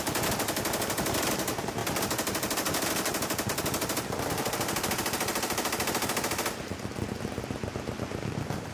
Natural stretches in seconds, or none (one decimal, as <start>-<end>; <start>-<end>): 0.0-8.7